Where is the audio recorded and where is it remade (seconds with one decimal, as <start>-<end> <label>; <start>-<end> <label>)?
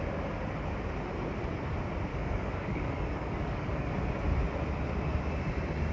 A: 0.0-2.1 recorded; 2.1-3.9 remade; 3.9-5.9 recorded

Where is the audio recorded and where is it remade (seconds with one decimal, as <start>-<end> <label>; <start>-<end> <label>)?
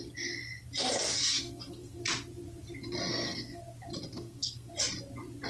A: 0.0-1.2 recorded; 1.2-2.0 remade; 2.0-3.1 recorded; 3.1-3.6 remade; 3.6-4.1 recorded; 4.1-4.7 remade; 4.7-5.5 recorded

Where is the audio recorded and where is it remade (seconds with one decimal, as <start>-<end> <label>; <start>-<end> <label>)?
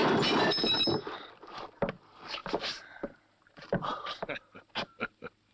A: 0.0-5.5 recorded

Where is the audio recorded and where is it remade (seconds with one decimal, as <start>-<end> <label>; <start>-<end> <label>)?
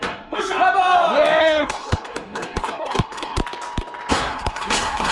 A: 0.0-0.4 remade; 0.4-1.4 recorded; 1.4-3.4 remade; 3.4-4.1 recorded; 4.1-5.1 remade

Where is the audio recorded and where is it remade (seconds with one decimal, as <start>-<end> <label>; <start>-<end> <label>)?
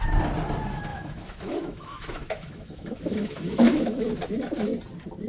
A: 0.0-0.9 recorded; 0.9-4.1 remade; 4.1-5.3 recorded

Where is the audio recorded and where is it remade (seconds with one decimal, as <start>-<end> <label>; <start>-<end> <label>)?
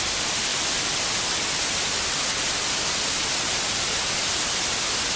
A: 0.0-5.2 recorded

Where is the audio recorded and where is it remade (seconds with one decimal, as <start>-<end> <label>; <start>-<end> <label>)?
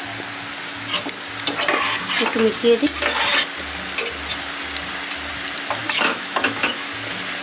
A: 0.0-5.8 recorded; 5.8-6.9 remade; 6.9-7.4 recorded